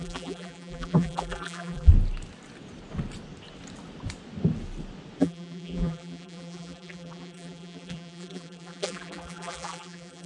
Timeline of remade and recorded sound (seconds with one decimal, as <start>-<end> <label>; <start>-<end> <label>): 0.0-1.9 remade; 1.9-5.2 recorded; 5.2-10.3 remade